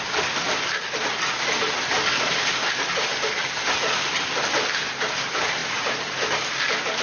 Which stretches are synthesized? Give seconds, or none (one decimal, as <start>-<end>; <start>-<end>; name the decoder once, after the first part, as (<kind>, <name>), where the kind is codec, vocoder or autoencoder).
none